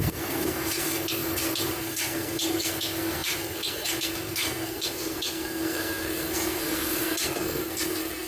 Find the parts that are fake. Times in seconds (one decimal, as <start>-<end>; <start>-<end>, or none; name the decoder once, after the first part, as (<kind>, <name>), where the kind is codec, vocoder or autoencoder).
0.0-8.3 (codec, SNAC)